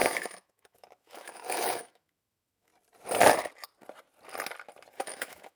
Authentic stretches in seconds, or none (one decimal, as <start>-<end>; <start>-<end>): 2.7-4.9